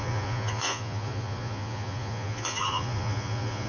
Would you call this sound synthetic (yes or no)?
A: yes